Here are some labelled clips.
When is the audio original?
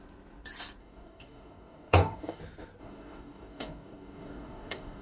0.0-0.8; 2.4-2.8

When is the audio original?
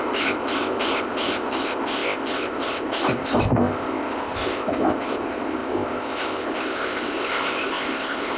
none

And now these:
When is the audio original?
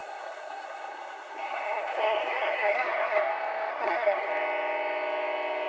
3.3-3.7; 4.3-5.7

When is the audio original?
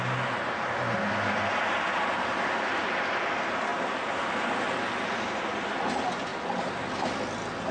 0.0-3.7; 4.6-7.7